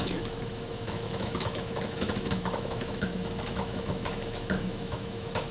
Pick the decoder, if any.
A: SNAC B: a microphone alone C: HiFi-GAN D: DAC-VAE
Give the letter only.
D